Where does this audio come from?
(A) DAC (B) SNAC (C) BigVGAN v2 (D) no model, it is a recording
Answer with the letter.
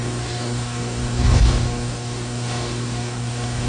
A